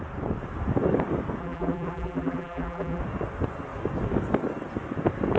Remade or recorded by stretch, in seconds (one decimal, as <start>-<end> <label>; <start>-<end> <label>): 0.0-1.4 recorded; 1.4-3.0 remade; 3.0-5.4 recorded